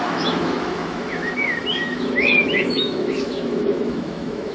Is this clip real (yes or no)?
no